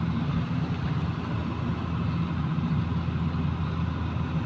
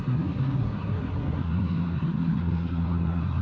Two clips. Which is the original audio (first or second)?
first